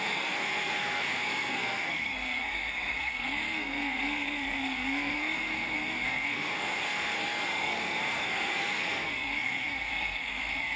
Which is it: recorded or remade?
remade